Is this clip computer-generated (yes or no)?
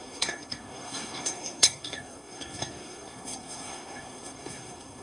yes